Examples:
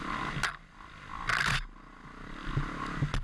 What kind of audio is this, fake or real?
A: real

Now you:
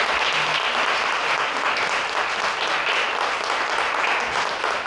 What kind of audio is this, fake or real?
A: real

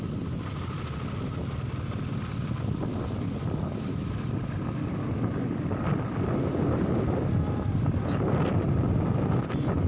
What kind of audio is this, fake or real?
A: fake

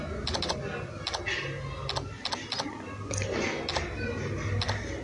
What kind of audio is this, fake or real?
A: real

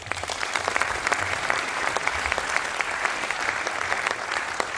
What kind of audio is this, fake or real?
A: fake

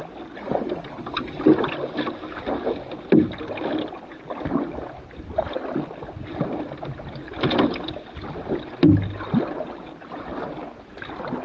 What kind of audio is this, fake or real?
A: real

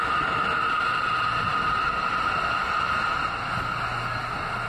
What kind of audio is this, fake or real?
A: real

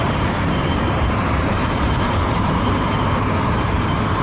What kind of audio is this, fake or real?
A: fake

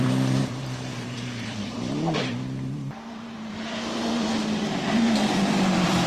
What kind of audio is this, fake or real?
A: fake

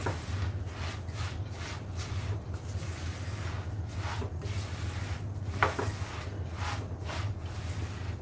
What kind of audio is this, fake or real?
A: real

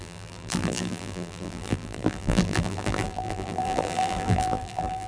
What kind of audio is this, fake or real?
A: fake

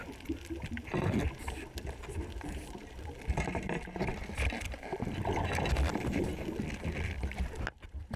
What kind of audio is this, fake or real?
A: real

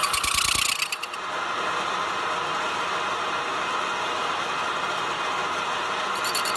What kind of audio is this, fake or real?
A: real